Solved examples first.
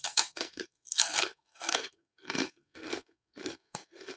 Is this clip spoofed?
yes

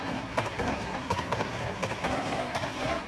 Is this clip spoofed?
yes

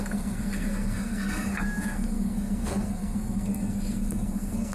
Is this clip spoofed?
yes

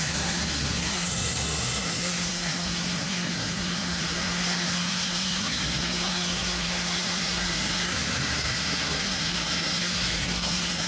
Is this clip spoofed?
yes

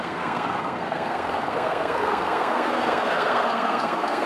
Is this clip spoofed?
yes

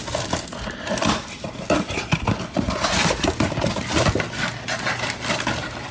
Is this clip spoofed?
no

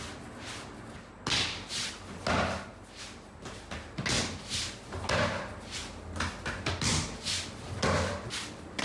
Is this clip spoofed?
no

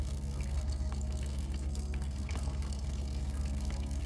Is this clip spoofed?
yes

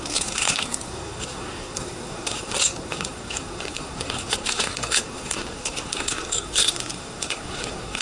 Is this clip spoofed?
yes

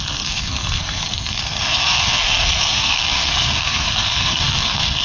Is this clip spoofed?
yes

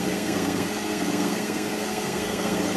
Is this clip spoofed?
yes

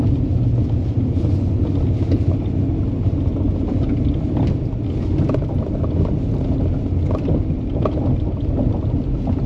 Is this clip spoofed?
no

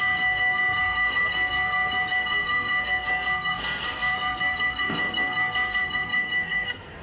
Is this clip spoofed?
yes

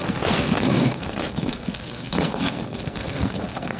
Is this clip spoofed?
yes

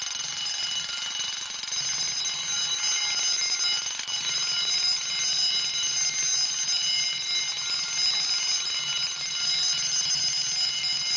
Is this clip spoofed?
no